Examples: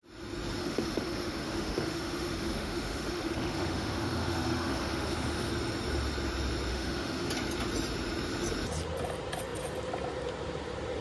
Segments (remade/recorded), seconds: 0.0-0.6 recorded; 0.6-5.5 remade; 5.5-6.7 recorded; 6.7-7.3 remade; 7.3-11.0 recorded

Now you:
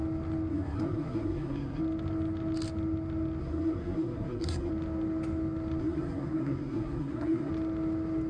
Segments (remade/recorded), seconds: 0.0-0.5 recorded; 0.5-1.8 remade; 1.8-3.4 recorded; 3.4-4.7 remade; 4.7-5.8 recorded; 5.8-7.5 remade; 7.5-8.3 recorded

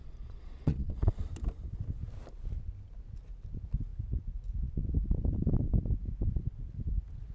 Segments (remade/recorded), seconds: 0.0-1.3 remade; 1.3-7.3 recorded

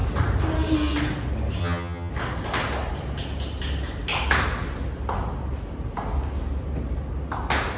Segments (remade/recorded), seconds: 0.0-1.6 recorded; 1.6-2.1 remade; 2.1-7.8 recorded

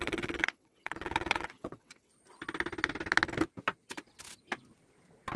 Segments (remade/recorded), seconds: 0.0-2.1 remade; 2.1-5.4 recorded

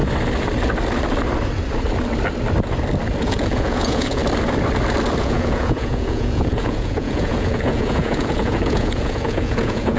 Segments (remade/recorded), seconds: 0.0-3.2 recorded; 3.2-4.2 remade; 4.2-5.2 recorded; 5.2-10.0 remade

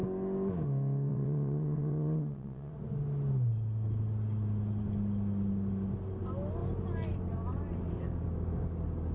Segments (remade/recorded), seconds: 0.0-1.1 recorded; 1.1-2.7 remade; 2.7-9.1 recorded

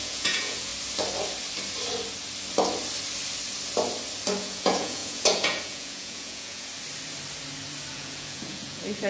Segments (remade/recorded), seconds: 0.0-0.7 remade; 0.7-4.4 recorded; 4.4-6.7 remade; 6.7-7.9 recorded; 7.9-9.1 remade